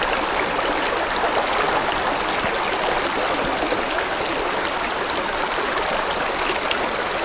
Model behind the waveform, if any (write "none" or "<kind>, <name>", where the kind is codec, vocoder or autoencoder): none